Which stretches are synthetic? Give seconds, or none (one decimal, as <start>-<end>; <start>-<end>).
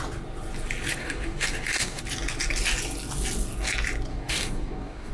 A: 1.0-2.0; 4.1-5.1